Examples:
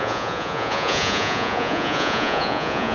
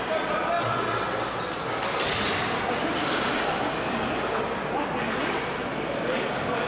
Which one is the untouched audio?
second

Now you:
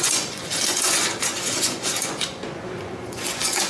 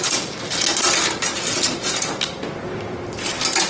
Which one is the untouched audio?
second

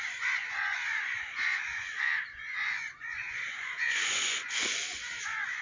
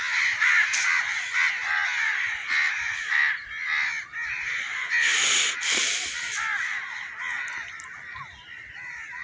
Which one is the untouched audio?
second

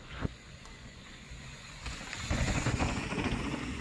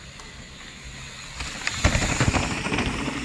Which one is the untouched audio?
second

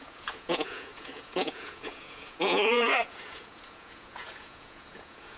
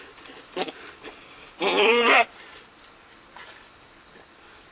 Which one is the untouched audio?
second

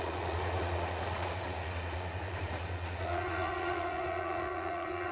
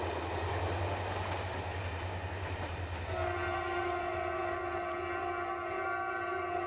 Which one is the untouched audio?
second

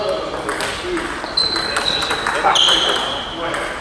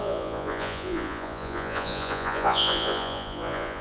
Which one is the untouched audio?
first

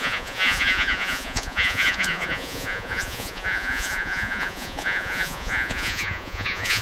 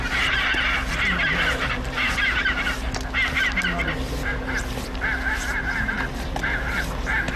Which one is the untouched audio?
second